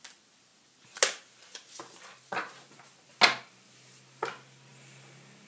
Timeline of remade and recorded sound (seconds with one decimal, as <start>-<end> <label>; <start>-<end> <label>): 0.0-5.5 recorded